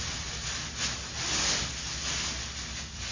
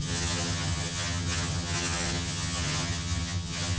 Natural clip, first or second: first